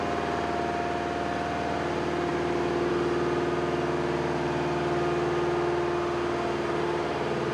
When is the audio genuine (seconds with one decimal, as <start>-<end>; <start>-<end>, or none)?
0.0-7.5